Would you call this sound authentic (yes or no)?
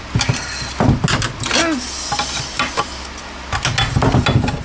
yes